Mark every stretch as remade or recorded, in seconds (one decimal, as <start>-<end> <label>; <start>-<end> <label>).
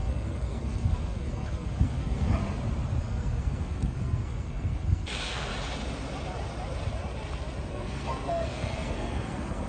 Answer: 0.0-2.4 remade; 2.4-3.0 recorded; 3.0-5.5 remade; 5.5-7.7 recorded; 7.7-9.7 remade